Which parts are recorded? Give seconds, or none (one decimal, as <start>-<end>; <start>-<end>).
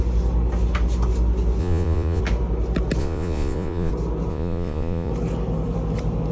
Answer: 0.0-1.6; 2.2-3.0; 3.9-4.3; 5.1-6.3